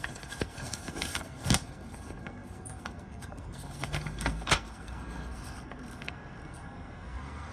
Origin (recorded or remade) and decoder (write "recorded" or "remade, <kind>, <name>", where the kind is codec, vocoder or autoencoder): remade, codec, SNAC